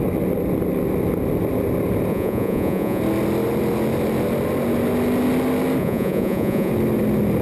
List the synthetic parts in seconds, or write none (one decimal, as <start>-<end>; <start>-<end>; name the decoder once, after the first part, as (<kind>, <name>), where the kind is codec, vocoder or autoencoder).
2.1-3.0 (vocoder, Vocos); 5.8-6.7